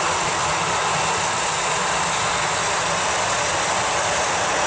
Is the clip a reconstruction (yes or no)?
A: no